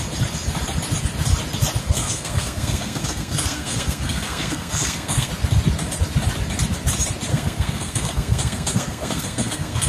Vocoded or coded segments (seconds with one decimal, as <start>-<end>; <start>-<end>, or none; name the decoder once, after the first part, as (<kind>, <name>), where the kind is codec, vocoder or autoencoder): 1.8-5.3 (codec, SNAC); 7.3-9.9